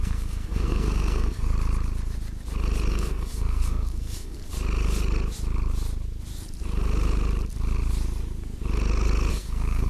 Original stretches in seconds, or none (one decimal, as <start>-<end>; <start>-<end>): 1.5-2.9; 4.4-9.3